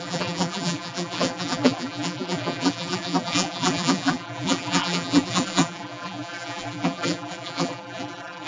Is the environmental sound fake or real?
fake